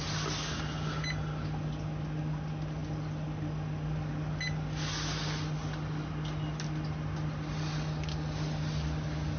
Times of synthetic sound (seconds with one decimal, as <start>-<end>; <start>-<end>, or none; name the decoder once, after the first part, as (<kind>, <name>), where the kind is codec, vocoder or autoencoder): none